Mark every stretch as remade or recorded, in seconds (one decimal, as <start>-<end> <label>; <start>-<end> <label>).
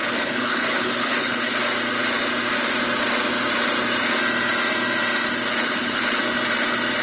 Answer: 0.0-1.6 remade; 1.6-5.6 recorded; 5.6-6.2 remade; 6.2-7.0 recorded